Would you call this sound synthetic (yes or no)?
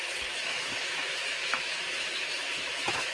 yes